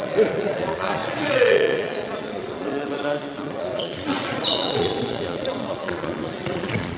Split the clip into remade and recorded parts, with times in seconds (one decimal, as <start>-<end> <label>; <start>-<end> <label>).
0.0-7.0 remade